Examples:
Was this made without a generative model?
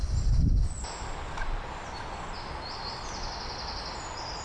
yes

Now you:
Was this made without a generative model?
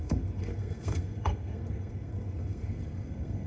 no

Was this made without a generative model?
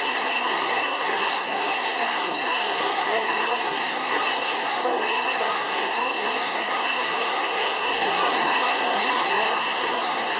no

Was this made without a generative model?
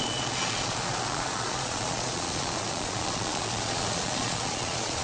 no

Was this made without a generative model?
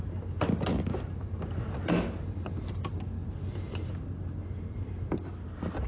yes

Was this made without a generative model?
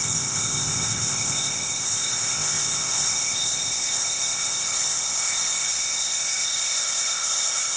no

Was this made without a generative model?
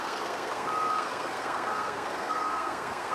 no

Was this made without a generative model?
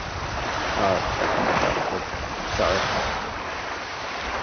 yes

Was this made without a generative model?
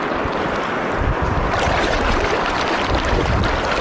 yes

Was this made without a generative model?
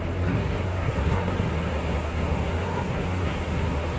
no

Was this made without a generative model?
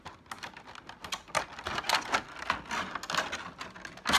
yes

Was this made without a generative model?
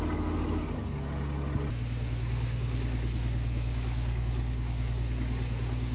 yes